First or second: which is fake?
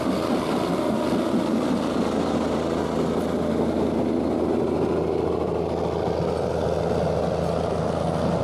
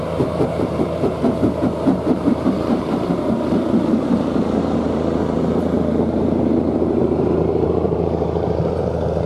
second